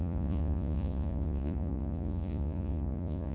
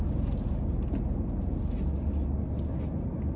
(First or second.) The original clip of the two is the second